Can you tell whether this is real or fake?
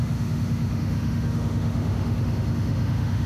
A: fake